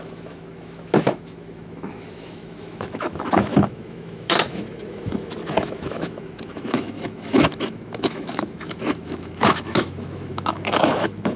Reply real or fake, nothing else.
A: fake